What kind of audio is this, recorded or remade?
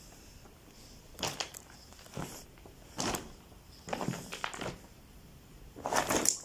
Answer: recorded